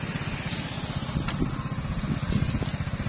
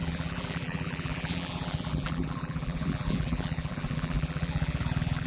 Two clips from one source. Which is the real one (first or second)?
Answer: first